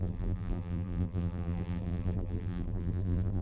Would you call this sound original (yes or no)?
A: no